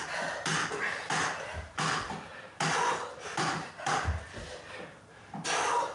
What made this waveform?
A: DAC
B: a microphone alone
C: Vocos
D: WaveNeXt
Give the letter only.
B